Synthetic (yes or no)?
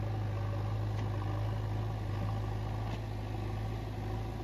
no